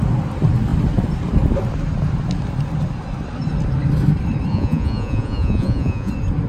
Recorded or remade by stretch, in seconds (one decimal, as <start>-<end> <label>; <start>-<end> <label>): 0.0-4.5 recorded; 4.5-6.1 remade; 6.1-6.5 recorded